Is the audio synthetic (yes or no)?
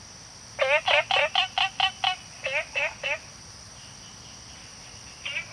no